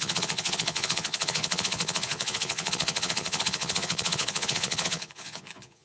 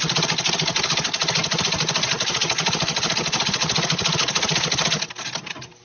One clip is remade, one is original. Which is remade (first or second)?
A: first